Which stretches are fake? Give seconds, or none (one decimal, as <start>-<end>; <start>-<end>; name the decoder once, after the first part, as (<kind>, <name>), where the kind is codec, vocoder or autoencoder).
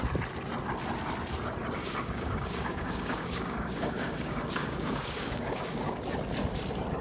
1.8-6.0 (codec, DAC)